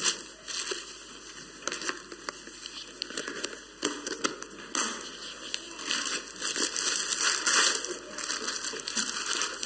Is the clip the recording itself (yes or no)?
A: yes